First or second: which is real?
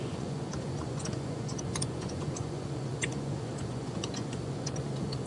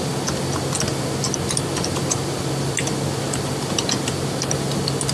second